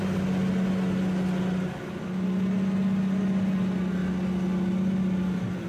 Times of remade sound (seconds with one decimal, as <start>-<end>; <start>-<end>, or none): none